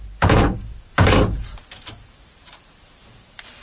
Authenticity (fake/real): fake